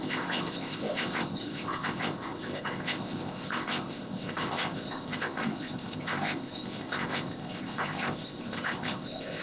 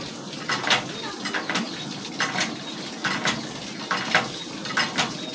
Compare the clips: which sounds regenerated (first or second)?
first